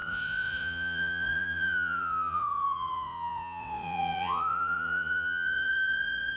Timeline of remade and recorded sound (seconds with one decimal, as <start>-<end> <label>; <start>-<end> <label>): 0.0-6.4 remade